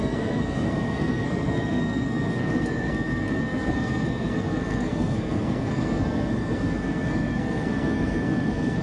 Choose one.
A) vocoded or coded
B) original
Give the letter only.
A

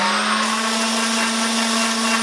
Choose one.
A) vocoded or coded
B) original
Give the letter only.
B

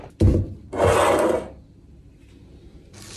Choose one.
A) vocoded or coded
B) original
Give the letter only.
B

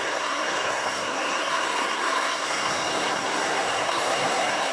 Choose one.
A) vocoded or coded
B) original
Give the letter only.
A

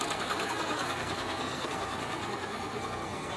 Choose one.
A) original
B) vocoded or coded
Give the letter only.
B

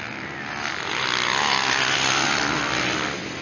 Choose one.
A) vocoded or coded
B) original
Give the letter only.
B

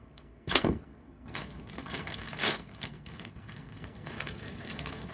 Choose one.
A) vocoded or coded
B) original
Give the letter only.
A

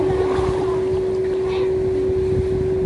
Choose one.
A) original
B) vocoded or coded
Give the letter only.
A